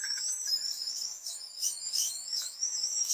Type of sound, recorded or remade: remade